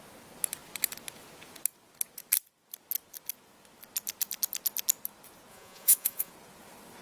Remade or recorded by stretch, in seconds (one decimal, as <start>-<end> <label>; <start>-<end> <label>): 0.0-5.5 recorded; 5.5-6.3 remade; 6.3-7.0 recorded